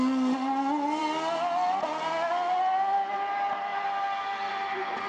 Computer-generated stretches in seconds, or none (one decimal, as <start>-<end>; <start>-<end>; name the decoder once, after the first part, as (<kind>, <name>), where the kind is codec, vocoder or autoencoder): none

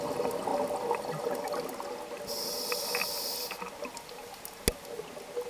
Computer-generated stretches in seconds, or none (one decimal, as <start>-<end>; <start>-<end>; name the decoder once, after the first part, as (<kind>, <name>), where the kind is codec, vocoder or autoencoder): none

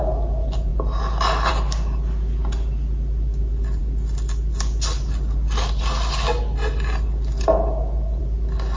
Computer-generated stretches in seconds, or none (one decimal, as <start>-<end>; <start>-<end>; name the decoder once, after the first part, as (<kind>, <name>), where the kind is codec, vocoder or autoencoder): none

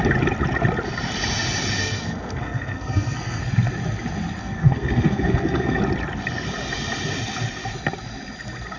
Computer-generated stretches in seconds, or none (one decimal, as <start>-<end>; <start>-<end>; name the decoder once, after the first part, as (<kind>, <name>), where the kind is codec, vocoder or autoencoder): 1.8-3.4 (codec, SNAC); 4.4-5.8

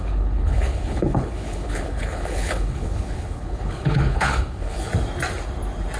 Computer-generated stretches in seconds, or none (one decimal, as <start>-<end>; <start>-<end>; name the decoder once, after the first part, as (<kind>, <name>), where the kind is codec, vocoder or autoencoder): 0.0-4.9 (codec, HILCodec)

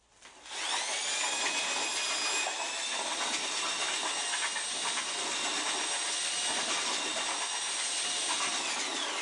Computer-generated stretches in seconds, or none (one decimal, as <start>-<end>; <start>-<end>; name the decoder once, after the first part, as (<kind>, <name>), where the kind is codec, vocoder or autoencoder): none